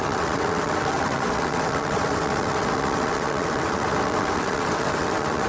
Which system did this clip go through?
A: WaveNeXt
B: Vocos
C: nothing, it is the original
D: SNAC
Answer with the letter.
A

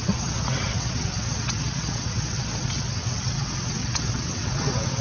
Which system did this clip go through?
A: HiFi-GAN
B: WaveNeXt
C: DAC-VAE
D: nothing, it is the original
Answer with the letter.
B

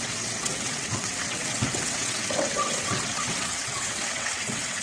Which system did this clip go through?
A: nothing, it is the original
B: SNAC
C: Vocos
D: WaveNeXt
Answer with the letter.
D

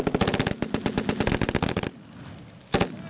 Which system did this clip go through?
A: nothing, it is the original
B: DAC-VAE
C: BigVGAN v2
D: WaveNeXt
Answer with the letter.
A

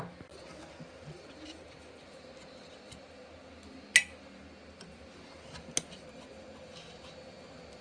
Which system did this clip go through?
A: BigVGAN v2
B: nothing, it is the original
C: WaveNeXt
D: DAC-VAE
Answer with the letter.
B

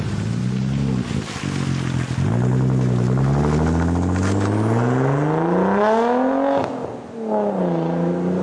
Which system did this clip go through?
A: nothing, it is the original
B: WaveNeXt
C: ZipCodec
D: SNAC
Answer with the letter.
A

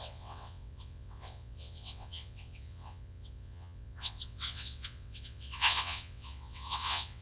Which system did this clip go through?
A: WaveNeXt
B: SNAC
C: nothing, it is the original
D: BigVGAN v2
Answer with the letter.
A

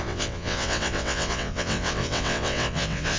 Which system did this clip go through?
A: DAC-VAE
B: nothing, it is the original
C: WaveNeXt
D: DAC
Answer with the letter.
C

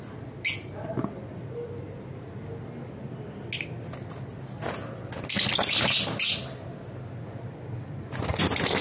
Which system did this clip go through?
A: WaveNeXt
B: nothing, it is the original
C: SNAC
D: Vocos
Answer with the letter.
B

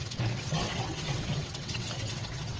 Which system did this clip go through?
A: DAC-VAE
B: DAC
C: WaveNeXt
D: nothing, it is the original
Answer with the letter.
C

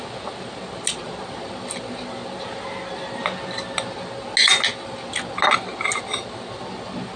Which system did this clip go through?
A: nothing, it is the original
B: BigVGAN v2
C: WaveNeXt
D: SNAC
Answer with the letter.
A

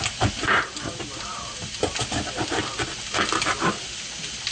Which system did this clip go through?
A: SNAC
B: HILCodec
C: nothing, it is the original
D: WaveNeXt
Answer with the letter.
C